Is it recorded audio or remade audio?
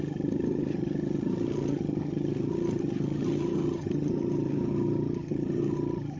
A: remade